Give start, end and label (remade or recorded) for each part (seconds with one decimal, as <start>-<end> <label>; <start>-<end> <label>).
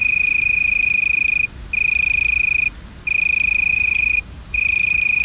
0.0-1.0 remade; 1.0-3.7 recorded; 3.7-5.2 remade